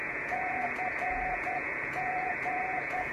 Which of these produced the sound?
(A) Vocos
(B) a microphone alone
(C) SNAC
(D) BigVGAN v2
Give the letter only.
A